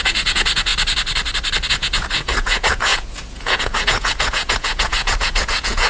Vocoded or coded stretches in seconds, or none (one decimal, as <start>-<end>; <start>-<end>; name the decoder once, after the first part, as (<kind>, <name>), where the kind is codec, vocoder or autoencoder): 0.0-0.7 (vocoder, Vocos); 1.7-5.9